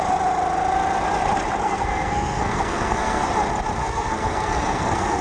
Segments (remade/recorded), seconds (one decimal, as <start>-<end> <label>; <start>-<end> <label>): 0.0-1.6 recorded; 1.6-3.3 remade; 3.3-3.8 recorded; 3.8-5.2 remade